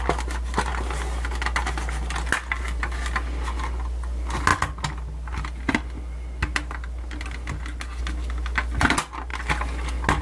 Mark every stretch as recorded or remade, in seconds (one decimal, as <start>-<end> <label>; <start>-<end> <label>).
0.0-10.2 recorded